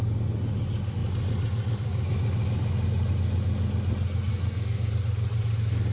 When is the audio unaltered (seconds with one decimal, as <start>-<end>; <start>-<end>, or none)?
0.0-4.3; 4.9-5.9